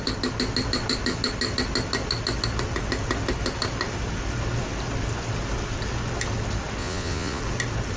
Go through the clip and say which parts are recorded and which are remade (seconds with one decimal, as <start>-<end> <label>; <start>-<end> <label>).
0.0-6.8 recorded; 6.8-7.4 remade; 7.4-8.0 recorded